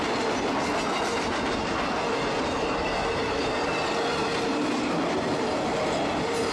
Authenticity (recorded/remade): recorded